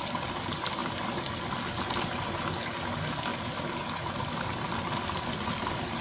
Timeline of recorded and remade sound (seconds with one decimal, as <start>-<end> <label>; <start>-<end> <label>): 0.0-6.0 recorded